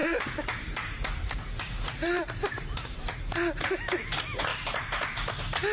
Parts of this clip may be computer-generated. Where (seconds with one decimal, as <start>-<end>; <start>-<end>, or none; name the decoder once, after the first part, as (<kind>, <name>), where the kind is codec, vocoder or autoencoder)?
0.0-3.2 (vocoder, BigVGAN v2); 4.5-5.3